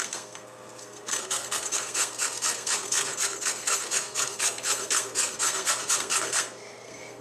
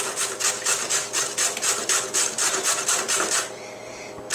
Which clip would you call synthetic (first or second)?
first